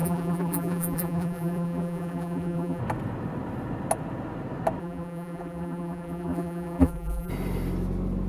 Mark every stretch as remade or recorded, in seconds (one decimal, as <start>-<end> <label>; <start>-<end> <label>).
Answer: 0.0-2.8 remade; 2.8-4.8 recorded; 4.8-7.3 remade; 7.3-8.3 recorded